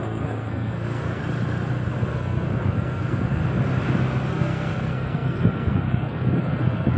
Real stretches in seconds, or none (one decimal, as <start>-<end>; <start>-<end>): 1.2-1.9; 3.4-4.3